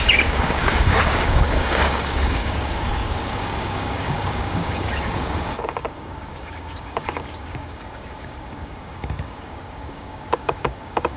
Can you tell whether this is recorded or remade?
remade